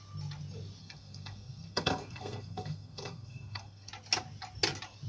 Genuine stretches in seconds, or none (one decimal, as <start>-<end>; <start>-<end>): 0.0-0.8; 3.9-5.1